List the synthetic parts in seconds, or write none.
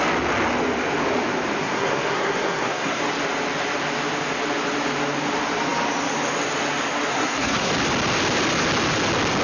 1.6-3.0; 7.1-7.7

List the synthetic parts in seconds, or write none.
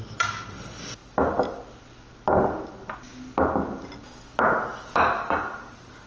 none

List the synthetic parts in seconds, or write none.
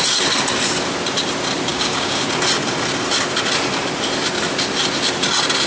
1.7-2.2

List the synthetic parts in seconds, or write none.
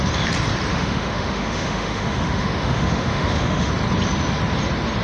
0.7-3.7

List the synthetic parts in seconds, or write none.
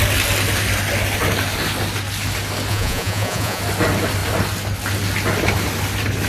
2.7-3.6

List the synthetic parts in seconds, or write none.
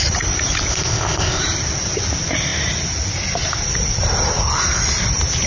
0.7-1.4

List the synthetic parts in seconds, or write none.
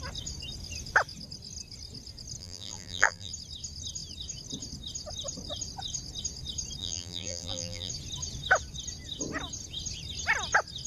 2.4-3.3; 6.8-7.9